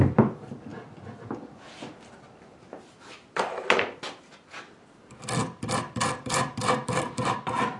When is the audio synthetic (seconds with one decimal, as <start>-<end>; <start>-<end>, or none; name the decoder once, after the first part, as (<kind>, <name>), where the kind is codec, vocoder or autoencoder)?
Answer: 0.0-0.7 (vocoder, BigVGAN v2); 3.1-7.8